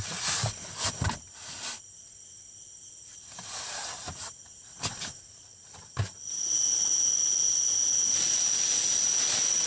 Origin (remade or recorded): recorded